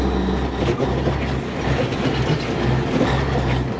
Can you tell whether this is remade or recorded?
recorded